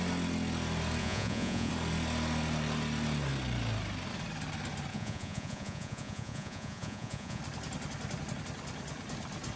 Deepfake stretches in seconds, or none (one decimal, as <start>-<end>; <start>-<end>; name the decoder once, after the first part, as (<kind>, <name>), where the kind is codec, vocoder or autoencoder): 1.0-1.7 (vocoder, Vocos); 4.9-7.4